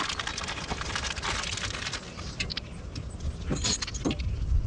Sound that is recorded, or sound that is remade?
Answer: recorded